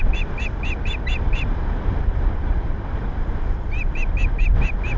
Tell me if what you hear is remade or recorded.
remade